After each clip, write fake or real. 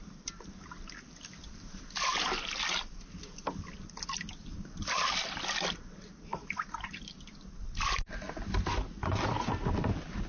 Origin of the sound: real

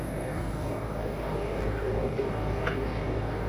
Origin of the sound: fake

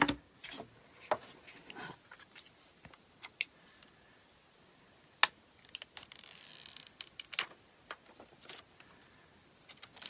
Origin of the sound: real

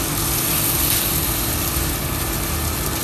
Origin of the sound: real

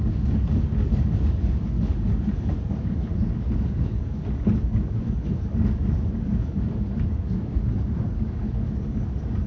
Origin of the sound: fake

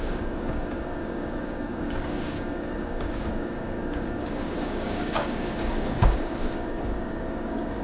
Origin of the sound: fake